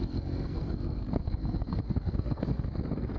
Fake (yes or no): yes